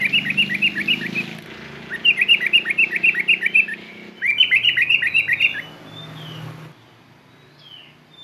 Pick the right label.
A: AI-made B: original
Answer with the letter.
B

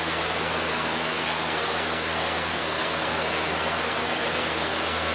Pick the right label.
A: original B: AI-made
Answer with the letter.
B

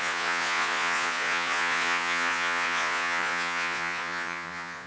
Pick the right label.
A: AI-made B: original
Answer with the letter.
A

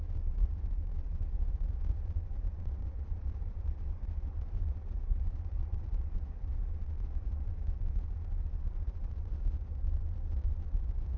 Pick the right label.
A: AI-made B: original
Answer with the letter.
A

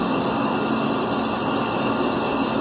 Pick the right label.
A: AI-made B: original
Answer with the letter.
B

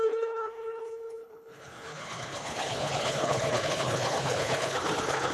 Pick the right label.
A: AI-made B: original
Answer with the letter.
A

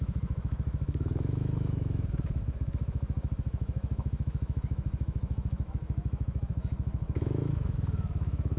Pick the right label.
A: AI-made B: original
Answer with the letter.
A